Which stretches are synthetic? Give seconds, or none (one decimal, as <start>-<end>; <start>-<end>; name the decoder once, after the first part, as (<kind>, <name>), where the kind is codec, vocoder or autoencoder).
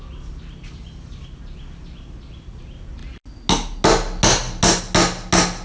none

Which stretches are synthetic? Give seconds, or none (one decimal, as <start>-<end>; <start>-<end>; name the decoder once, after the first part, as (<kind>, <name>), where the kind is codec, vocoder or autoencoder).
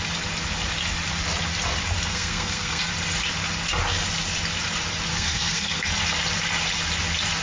2.1-2.9 (codec, SNAC); 5.1-5.9